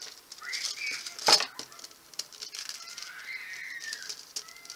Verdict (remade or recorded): recorded